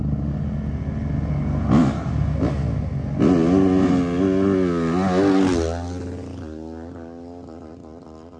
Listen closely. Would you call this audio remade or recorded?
recorded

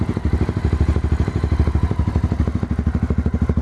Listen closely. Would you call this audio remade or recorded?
recorded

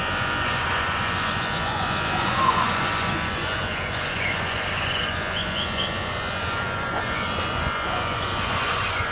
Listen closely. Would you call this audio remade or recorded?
remade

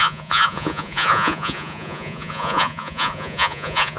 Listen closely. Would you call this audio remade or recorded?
remade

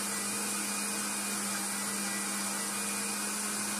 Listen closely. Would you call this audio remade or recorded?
recorded